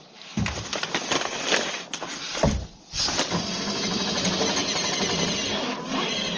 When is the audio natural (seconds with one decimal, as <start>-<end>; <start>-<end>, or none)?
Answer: 0.0-2.1; 3.0-4.6; 5.3-6.4